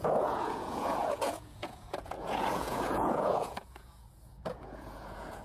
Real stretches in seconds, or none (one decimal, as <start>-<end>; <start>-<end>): none